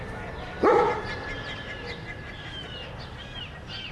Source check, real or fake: real